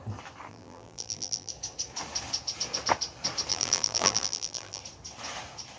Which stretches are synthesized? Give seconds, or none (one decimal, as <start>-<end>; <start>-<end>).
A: 0.5-1.5; 3.5-4.8